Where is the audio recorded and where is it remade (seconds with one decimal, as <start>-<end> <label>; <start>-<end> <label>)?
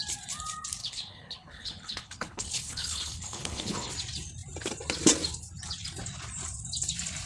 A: 0.0-0.8 recorded; 0.8-3.9 remade; 3.9-7.3 recorded